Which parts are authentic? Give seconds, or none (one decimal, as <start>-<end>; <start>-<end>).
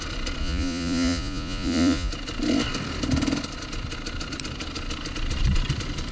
0.0-0.4; 2.1-6.1